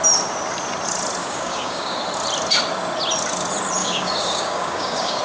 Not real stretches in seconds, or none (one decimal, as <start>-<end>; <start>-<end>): 1.2-2.0; 3.8-5.2